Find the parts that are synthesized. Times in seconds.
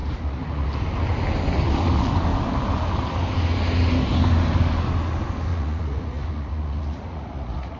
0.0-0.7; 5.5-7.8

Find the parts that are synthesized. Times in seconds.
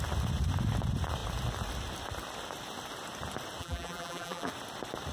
3.6-4.5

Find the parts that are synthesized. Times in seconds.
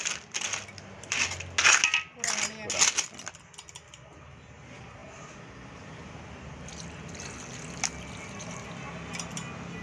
none